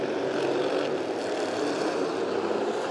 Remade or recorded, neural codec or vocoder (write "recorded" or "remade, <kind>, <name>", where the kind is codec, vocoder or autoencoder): recorded